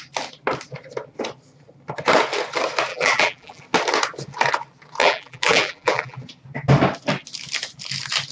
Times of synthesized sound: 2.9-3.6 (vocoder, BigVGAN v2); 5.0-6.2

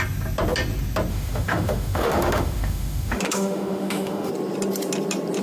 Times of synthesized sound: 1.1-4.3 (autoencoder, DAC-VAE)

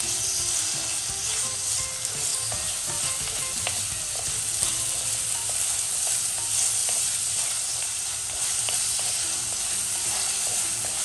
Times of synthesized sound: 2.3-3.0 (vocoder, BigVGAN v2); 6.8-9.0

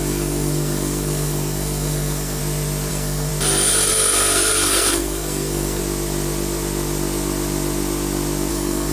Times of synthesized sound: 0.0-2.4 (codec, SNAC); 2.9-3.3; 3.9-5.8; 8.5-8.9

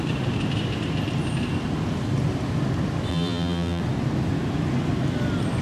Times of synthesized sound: 3.1-3.8 (vocoder, BigVGAN v2)

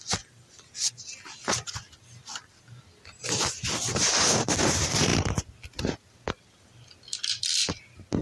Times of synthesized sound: none

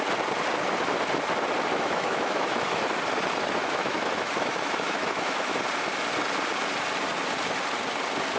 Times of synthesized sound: 1.7-2.8 (autoencoder, DAC-VAE); 3.6-5.6

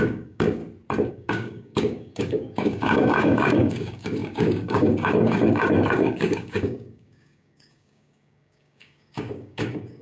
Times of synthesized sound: 0.0-0.6 (codec, DAC); 1.1-10.0